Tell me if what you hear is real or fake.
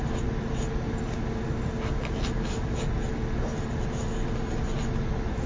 real